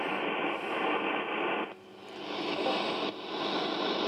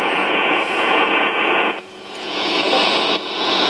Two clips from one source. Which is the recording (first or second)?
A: first